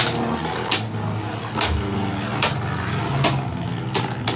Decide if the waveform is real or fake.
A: real